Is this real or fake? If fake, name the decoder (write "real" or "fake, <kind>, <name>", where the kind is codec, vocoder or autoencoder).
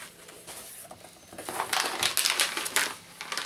real